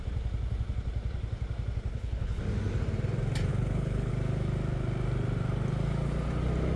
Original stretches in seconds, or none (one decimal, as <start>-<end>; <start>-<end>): 0.0-1.9; 2.4-3.5; 4.1-6.8